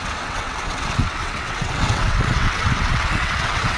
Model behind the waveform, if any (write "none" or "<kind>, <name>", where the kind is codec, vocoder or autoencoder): vocoder, WaveNeXt